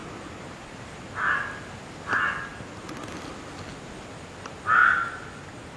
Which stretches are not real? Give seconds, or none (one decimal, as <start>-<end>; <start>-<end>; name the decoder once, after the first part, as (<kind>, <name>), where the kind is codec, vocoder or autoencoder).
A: 0.0-1.1 (vocoder, BigVGAN v2)